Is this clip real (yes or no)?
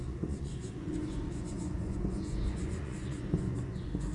no